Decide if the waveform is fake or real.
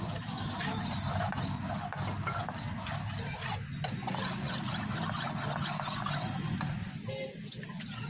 real